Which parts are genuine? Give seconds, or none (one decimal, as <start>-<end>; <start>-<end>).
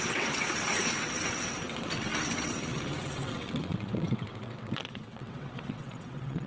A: none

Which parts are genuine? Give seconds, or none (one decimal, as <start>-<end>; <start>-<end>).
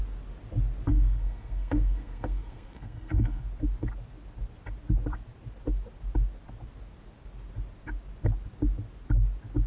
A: 0.0-0.9; 3.4-9.7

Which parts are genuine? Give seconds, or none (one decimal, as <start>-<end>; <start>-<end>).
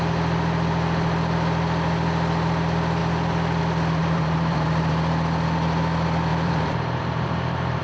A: 0.0-4.0; 4.9-6.3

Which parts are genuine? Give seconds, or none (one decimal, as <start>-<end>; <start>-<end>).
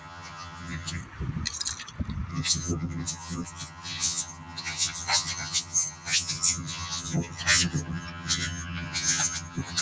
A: 1.0-2.3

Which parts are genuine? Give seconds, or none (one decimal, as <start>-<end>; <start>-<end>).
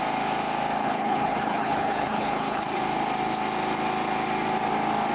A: 0.0-0.8; 2.8-5.1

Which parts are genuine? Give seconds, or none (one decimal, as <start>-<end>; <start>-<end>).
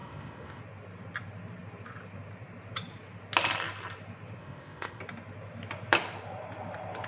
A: 0.6-4.4; 5.0-7.1